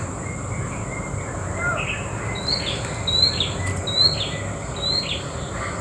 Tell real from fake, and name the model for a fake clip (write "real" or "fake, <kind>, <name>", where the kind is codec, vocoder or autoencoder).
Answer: real